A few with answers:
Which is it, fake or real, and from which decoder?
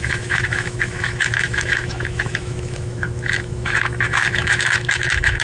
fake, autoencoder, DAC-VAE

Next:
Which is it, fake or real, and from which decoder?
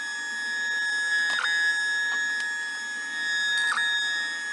real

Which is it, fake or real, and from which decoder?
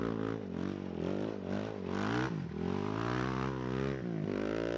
real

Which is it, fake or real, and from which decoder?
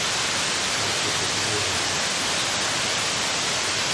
real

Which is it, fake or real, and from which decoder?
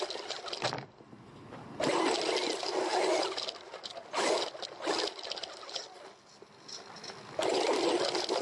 real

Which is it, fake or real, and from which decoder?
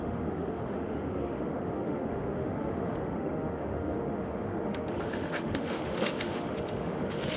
fake, autoencoder, DAC-VAE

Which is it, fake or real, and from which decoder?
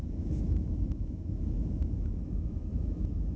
fake, autoencoder, DAC-VAE